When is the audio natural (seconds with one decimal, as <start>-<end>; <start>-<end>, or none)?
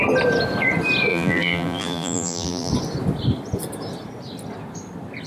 0.0-1.1; 2.7-5.3